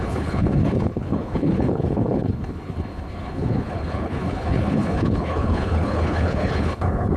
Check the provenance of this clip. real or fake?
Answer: fake